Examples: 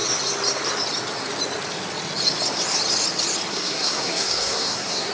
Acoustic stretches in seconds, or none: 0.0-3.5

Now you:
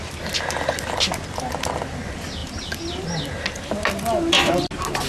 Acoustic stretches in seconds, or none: 0.0-5.1

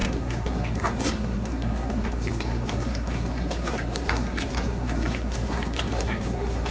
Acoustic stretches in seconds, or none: none

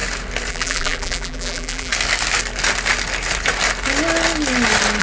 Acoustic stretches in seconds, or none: 0.0-0.5; 1.9-5.0

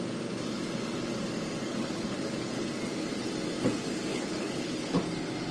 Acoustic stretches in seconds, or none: 0.0-1.7; 2.7-4.1; 5.0-5.5

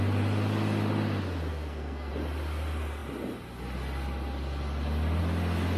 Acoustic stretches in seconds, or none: 0.0-1.5; 2.1-5.8

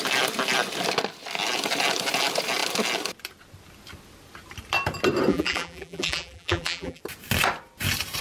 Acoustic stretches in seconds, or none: 0.0-5.3; 7.0-8.2